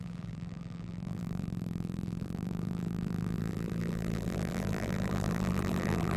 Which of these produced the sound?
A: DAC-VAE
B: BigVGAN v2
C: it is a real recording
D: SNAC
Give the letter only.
B